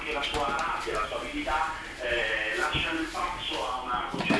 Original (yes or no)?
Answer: yes